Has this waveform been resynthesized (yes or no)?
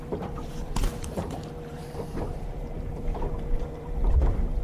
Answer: yes